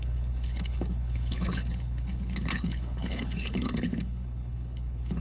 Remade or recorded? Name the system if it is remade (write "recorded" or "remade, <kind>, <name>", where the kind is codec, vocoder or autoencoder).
remade, codec, HILCodec